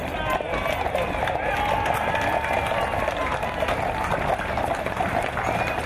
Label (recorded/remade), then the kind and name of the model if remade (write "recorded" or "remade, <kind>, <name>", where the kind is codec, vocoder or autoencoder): recorded